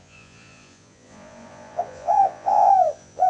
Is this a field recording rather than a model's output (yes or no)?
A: no